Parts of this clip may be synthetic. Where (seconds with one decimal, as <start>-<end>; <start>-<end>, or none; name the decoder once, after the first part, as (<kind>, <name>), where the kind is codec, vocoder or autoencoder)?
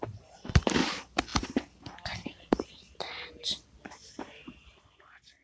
none